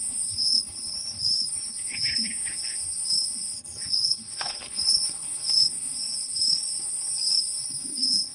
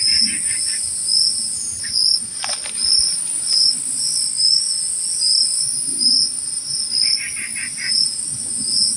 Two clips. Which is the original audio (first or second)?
second